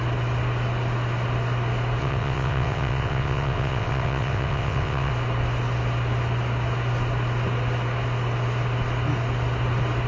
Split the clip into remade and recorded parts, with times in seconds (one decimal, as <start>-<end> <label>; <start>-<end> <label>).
0.0-2.0 recorded; 2.0-5.1 remade; 5.1-10.1 recorded